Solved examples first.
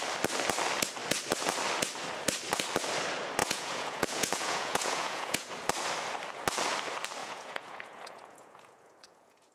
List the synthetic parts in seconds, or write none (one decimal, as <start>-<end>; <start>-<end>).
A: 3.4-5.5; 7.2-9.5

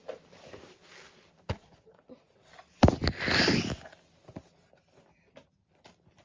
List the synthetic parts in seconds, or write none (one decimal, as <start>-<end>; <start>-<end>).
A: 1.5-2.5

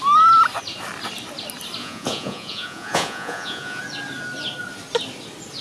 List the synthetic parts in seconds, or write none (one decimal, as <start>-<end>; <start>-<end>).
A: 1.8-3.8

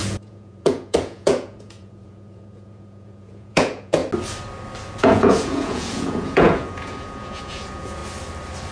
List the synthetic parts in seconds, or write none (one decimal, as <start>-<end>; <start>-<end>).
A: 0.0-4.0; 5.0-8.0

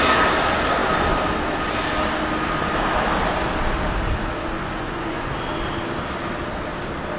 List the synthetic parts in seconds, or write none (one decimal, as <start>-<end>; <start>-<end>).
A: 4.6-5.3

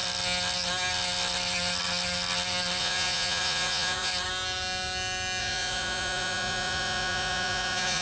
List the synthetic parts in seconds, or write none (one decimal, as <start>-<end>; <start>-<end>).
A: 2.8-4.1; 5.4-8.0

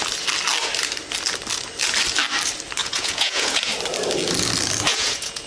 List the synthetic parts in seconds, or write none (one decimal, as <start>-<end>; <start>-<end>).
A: 2.8-3.7; 4.9-5.5